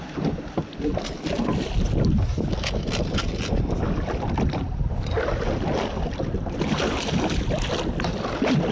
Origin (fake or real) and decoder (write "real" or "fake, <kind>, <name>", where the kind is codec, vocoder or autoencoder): real